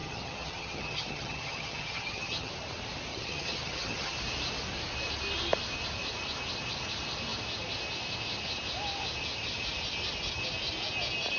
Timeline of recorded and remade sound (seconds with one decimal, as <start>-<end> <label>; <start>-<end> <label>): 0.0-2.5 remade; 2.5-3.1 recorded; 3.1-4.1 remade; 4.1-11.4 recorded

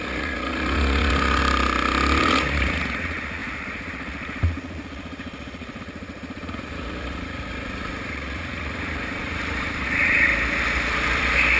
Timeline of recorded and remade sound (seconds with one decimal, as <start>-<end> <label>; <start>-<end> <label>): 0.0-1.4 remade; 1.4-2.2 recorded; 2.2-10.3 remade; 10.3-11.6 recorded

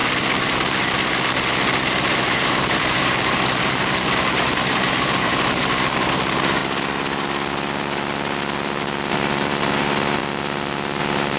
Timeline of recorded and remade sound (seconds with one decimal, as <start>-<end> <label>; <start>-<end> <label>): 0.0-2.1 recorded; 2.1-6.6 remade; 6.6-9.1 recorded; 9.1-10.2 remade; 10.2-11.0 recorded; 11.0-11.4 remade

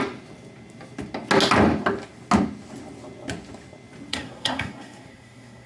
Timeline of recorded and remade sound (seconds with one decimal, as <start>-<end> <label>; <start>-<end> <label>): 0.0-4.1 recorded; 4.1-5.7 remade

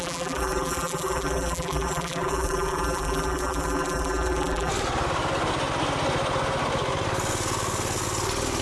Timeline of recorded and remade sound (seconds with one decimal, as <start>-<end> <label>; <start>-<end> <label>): 0.0-4.7 remade; 4.7-8.6 recorded